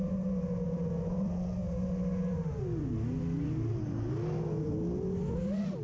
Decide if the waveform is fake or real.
real